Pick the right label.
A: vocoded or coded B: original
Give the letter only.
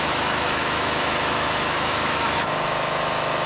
A